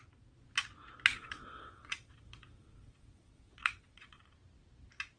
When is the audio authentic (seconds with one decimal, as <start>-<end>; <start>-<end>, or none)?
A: 0.0-1.1; 4.2-5.2